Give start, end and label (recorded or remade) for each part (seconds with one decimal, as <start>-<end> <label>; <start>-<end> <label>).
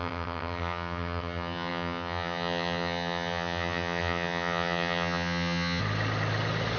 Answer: 0.0-5.8 remade; 5.8-6.8 recorded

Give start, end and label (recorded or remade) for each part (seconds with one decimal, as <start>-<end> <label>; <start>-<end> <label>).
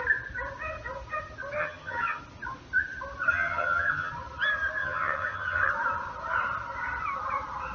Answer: 0.0-1.6 recorded; 1.6-2.2 remade; 2.2-3.3 recorded; 3.3-4.1 remade; 4.1-4.8 recorded; 4.8-5.7 remade; 5.7-7.7 recorded